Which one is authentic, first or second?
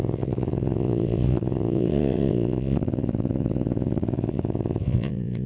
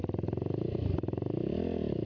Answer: second